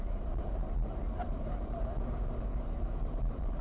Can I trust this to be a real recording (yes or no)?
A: no